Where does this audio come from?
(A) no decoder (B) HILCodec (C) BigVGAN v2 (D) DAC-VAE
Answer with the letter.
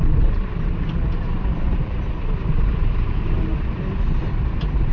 C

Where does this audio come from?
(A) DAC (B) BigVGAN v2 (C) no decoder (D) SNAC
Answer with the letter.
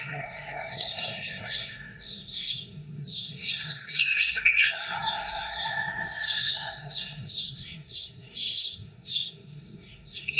D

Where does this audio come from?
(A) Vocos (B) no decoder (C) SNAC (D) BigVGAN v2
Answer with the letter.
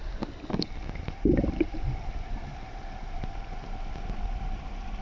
B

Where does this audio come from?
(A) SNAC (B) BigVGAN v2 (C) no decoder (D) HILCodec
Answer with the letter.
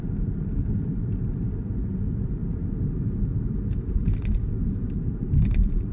B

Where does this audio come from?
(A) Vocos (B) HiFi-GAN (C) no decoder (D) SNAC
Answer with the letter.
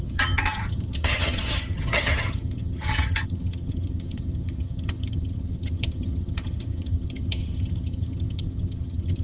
B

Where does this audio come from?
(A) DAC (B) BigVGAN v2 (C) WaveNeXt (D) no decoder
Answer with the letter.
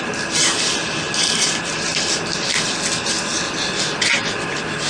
D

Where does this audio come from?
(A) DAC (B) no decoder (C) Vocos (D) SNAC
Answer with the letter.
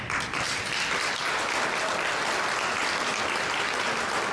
B